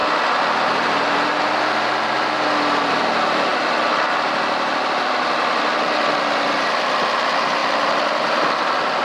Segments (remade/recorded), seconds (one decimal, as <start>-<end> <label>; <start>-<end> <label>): 0.0-9.0 recorded